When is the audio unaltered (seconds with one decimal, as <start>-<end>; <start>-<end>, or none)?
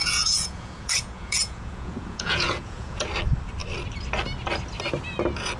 3.1-5.6